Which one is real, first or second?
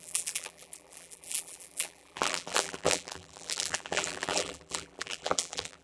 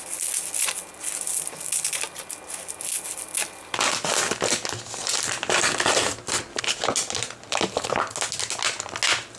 second